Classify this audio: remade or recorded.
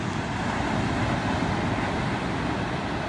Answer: recorded